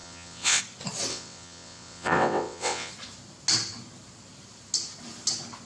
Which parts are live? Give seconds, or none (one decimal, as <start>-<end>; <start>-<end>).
0.6-1.1; 2.9-5.7